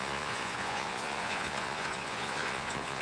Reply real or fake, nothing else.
fake